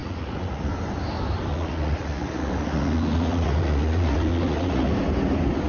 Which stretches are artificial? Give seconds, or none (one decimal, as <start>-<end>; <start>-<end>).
0.0-0.7; 1.5-4.9